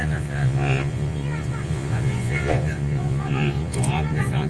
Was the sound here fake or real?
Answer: fake